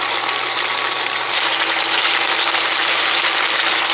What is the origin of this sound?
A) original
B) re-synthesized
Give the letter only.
A